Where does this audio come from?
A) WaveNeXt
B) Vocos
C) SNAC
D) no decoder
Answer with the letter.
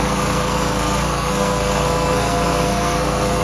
C